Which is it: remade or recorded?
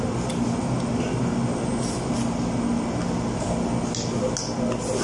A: recorded